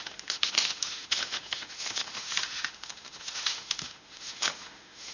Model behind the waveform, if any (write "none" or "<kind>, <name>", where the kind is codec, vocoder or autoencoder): autoencoder, DAC-VAE